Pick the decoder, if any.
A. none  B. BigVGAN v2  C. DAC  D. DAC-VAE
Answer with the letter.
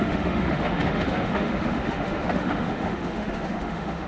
D